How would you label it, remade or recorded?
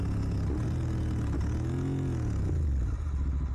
recorded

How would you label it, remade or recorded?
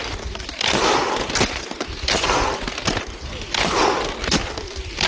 recorded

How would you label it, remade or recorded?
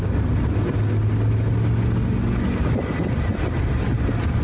recorded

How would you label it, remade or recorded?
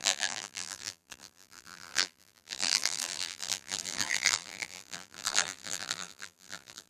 remade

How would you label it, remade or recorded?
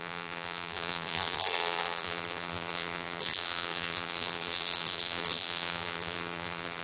remade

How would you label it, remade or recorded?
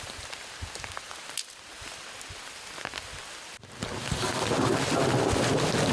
recorded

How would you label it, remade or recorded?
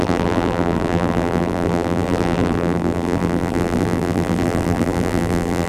remade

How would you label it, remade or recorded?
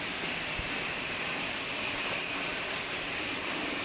remade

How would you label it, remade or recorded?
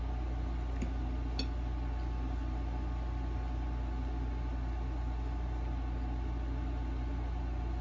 recorded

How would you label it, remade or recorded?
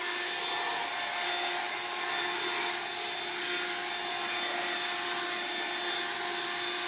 recorded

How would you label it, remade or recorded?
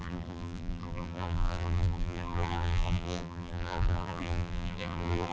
remade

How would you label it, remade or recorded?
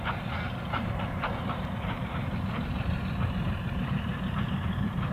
remade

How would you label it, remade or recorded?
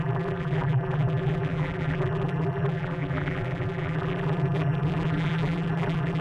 remade